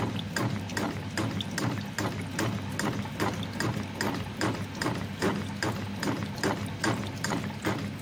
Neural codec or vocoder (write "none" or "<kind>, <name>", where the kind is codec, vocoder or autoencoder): none